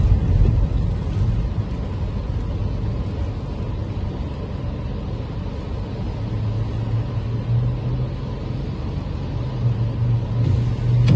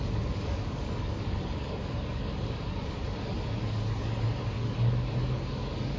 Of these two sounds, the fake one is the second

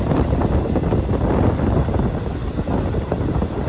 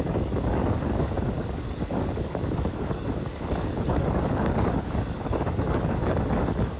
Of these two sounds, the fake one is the second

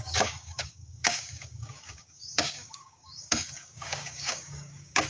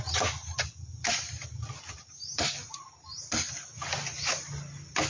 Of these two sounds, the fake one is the first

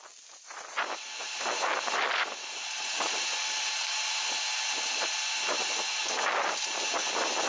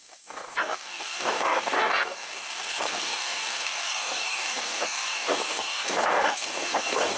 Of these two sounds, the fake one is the second